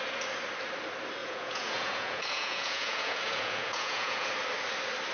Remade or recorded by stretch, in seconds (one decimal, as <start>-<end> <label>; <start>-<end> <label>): 0.0-1.2 recorded; 1.2-4.3 remade; 4.3-5.1 recorded